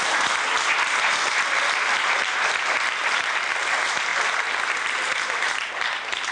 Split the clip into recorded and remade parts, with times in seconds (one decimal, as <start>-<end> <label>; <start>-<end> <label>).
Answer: 0.0-6.3 recorded